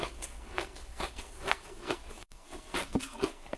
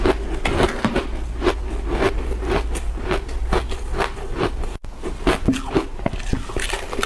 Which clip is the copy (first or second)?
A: first